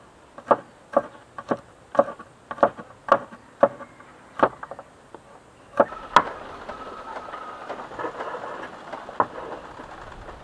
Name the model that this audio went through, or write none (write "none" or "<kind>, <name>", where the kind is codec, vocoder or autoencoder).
none